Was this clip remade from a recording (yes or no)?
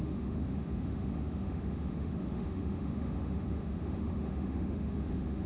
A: yes